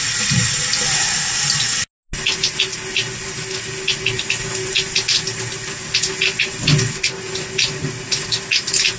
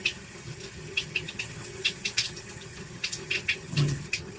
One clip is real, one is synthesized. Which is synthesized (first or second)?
second